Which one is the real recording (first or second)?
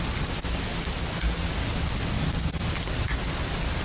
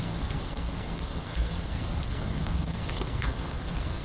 first